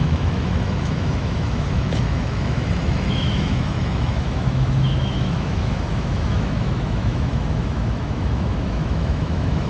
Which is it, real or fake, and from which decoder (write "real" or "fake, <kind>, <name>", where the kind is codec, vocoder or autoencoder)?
fake, autoencoder, DAC-VAE